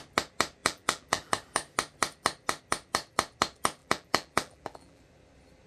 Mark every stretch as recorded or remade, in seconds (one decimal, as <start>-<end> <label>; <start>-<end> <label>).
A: 0.0-0.6 recorded; 0.6-1.3 remade; 1.3-3.8 recorded; 3.8-5.0 remade; 5.0-5.7 recorded